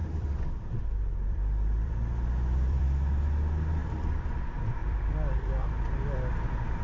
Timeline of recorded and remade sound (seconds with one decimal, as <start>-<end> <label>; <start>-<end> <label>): 0.0-2.8 remade; 2.8-3.8 recorded; 3.8-4.3 remade; 4.3-4.8 recorded; 4.8-5.5 remade; 5.5-6.8 recorded